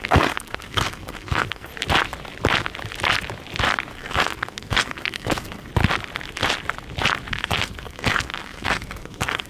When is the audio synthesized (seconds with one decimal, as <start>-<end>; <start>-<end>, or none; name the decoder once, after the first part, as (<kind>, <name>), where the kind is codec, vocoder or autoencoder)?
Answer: 0.0-1.7 (codec, SNAC); 3.9-5.7; 7.3-9.5